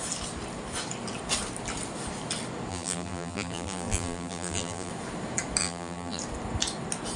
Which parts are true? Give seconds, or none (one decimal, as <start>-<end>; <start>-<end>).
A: 0.0-2.7; 4.9-5.6; 6.2-7.2